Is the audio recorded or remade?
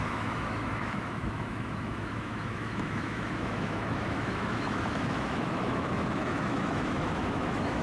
remade